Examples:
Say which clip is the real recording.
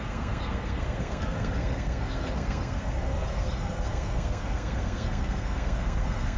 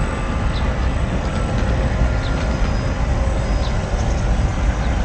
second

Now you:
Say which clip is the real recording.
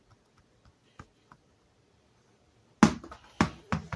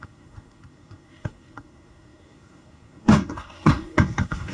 first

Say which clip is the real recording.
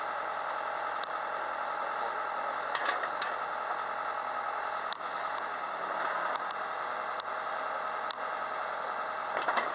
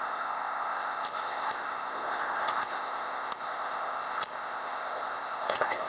first